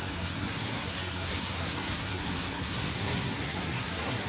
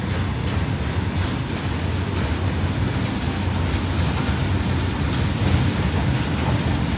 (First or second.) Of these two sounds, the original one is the second